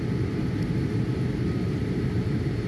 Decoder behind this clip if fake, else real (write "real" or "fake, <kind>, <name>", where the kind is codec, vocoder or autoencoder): fake, vocoder, BigVGAN v2